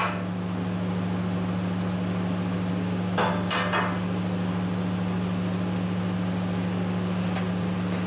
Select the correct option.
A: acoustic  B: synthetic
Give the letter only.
A